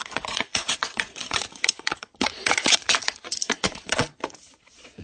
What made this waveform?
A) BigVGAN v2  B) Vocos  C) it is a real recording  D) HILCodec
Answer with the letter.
B